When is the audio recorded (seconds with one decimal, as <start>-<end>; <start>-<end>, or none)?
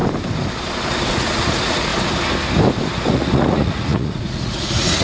0.0-1.1; 1.9-3.1